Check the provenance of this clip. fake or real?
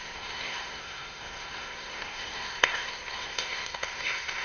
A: fake